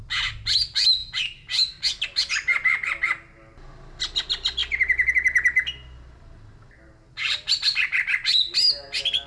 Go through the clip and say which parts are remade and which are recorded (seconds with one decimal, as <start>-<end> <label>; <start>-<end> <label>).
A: 0.0-9.3 recorded